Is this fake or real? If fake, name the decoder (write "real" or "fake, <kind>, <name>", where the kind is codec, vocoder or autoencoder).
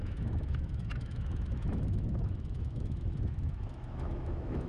fake, autoencoder, DAC-VAE